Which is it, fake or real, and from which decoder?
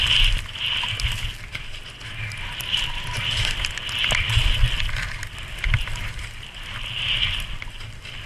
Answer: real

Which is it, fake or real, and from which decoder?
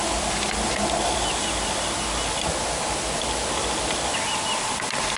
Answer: real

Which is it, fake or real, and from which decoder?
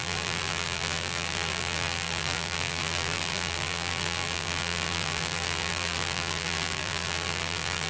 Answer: fake, vocoder, BigVGAN v2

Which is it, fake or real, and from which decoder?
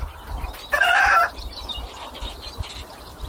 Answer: fake, vocoder, BigVGAN v2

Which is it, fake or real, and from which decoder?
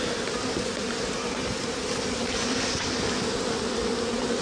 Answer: real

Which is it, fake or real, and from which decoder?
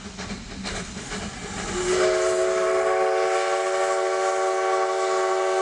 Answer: real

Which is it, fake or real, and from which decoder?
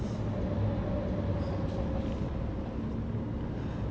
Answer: real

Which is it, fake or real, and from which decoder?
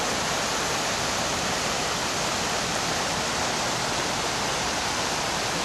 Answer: real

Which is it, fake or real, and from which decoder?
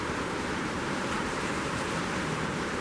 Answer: fake, vocoder, BigVGAN v2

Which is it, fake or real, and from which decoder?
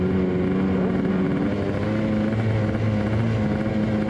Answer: real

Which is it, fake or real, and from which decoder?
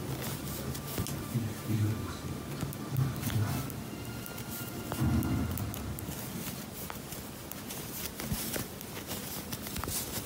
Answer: real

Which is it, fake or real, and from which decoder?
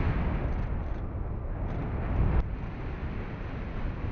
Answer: real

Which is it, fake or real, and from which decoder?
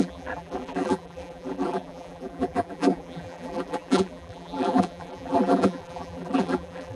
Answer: fake, vocoder, BigVGAN v2